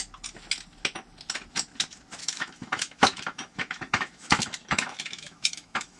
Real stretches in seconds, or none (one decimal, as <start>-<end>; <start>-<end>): 0.0-2.2